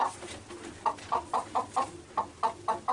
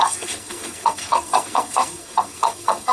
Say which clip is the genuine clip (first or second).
first